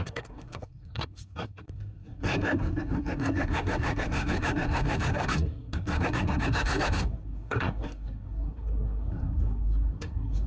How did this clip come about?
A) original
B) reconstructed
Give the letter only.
B